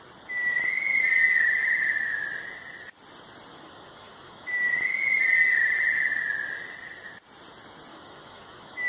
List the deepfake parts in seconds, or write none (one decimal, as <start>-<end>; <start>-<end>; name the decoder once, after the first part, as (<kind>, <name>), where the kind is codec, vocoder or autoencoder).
1.6-2.2 (autoencoder, DAC-VAE); 3.5-4.5; 7.9-8.9